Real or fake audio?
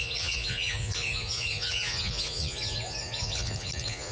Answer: fake